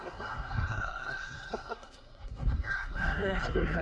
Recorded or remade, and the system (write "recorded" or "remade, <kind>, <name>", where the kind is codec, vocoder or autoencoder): remade, codec, SNAC